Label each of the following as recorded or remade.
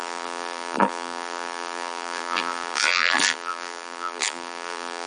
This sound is remade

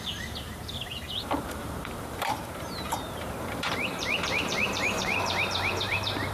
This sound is remade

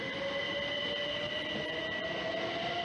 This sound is recorded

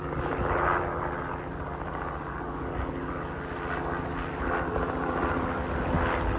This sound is recorded